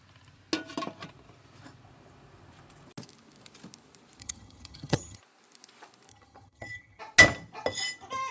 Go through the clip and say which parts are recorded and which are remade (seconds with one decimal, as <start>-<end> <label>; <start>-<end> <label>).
0.0-4.2 recorded; 4.2-5.2 remade; 5.2-6.1 recorded; 6.1-7.0 remade; 7.0-8.3 recorded